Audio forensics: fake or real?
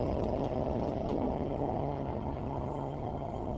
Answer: fake